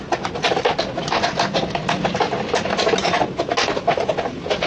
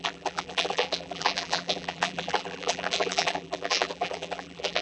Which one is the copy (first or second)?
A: second